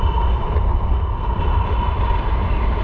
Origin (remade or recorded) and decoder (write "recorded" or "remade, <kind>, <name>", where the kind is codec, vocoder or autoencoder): recorded